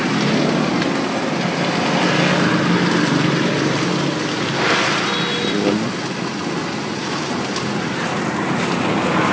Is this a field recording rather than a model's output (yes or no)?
yes